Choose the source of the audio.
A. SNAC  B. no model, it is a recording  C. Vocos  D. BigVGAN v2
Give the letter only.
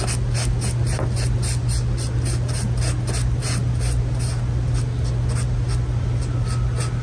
B